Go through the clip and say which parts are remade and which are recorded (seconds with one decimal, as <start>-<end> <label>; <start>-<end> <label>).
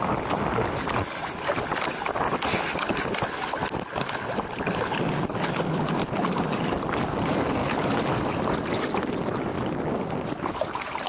0.0-11.1 recorded